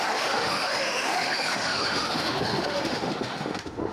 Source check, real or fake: fake